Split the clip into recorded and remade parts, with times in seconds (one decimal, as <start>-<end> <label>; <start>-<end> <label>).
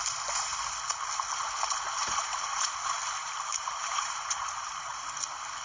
0.0-2.0 recorded; 2.0-3.0 remade; 3.0-3.5 recorded; 3.5-5.1 remade; 5.1-5.6 recorded